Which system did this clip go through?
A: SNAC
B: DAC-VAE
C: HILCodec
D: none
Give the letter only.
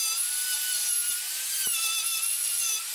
D